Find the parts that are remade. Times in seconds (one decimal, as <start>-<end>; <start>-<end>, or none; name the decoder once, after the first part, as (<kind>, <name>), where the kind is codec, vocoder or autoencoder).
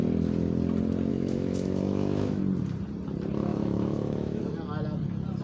1.1-2.4 (autoencoder, DAC-VAE); 3.5-4.4